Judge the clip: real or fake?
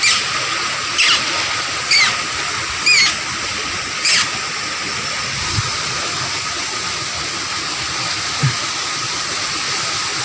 real